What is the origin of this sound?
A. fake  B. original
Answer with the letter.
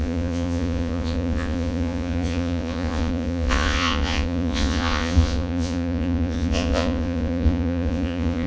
A